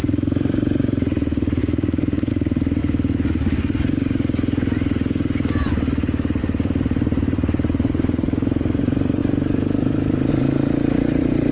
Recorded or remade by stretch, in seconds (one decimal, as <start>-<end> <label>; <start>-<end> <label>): 0.0-2.8 remade; 2.8-6.4 recorded; 6.4-11.5 remade